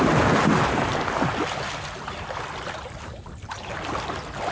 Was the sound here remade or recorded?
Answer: recorded